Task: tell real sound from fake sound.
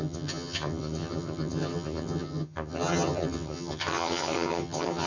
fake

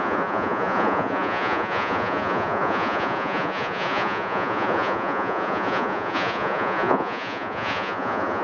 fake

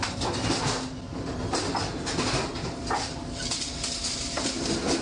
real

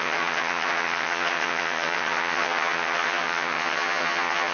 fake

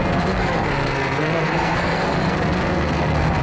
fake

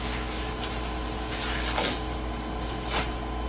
real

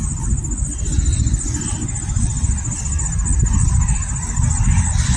real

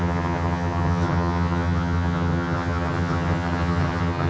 fake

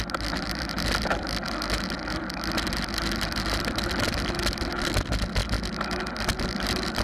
real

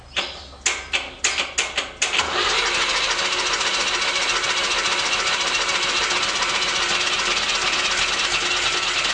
real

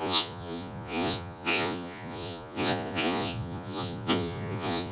fake